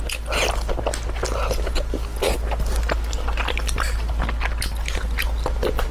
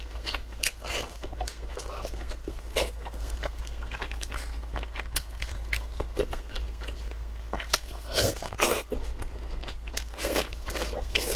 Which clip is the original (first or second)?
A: first